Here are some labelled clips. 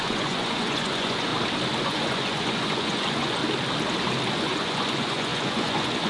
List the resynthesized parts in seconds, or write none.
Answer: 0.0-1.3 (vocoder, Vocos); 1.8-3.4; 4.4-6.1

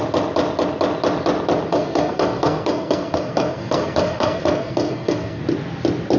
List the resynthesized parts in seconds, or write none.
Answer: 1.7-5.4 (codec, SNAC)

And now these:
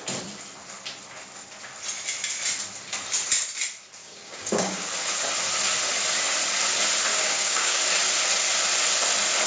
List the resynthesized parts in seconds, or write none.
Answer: 4.0-4.9 (codec, DAC); 7.1-7.8

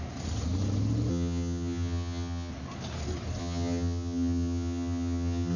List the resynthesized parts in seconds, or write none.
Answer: 1.1-2.5 (vocoder, HiFi-GAN); 3.4-5.6

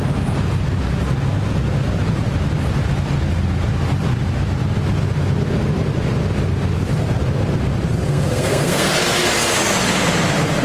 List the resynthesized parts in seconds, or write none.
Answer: 8.1-8.9 (codec, SNAC)

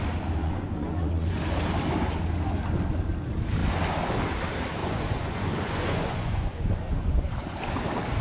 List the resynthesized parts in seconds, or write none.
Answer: 0.4-1.4 (vocoder, Vocos); 4.8-7.3

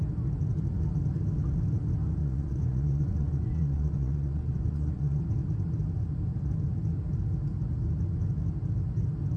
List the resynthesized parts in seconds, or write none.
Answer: 2.2-5.2 (vocoder, Vocos)

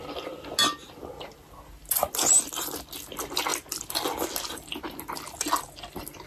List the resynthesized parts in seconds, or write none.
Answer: none